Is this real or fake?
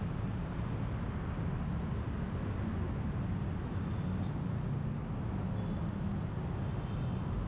real